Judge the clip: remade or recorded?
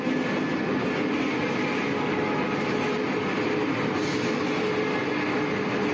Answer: recorded